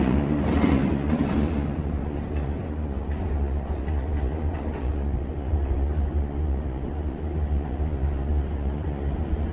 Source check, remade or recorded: remade